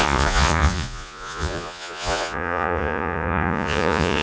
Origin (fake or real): fake